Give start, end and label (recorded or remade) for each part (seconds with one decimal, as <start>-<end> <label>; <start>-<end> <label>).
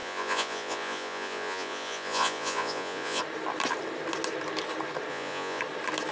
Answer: 0.0-3.2 remade; 3.2-5.1 recorded; 5.1-5.6 remade; 5.6-6.1 recorded